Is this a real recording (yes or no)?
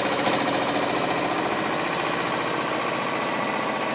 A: yes